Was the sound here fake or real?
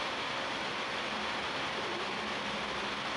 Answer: real